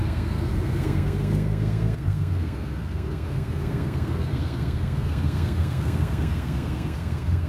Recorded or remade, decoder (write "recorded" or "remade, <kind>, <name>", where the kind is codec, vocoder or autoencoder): remade, codec, SNAC